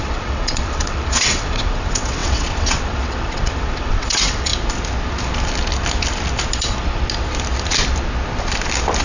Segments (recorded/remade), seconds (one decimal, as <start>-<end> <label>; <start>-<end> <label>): 0.0-4.5 remade; 4.5-9.0 recorded